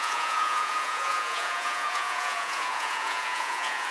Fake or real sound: fake